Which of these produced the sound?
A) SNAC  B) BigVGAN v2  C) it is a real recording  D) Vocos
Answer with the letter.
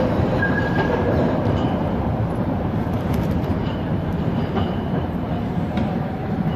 B